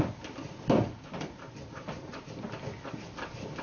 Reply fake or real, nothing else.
real